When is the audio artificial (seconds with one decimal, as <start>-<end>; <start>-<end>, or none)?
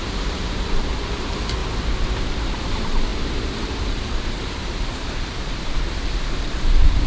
0.0-1.6; 2.2-7.1